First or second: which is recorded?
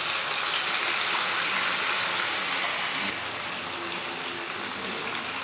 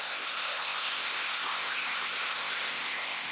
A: first